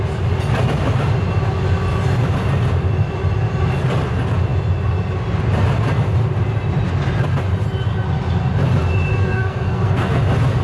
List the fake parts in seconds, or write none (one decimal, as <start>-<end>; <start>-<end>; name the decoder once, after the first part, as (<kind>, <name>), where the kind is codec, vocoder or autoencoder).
9.1-10.2 (codec, SNAC)